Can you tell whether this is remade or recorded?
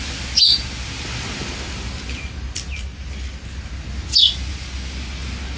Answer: recorded